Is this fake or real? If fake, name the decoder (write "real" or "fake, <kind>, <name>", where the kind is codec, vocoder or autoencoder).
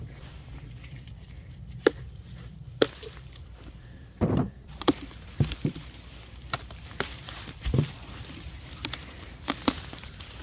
fake, vocoder, BigVGAN v2